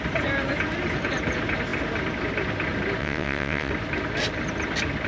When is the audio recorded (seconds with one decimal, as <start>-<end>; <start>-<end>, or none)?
0.0-3.0; 3.7-5.1